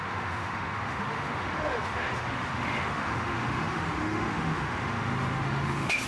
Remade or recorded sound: remade